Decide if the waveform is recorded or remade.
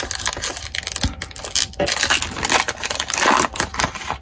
recorded